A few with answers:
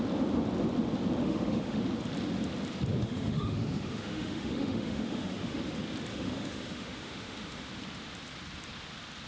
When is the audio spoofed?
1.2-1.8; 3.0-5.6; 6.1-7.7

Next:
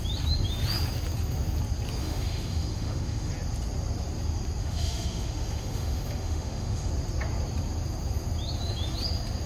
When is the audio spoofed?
2.0-3.3; 4.6-6.9

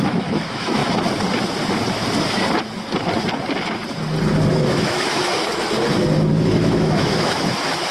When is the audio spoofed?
0.0-0.8; 4.5-5.5; 6.3-7.9

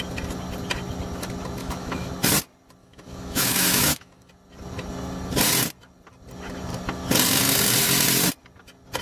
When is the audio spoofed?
1.6-2.1; 2.8-4.3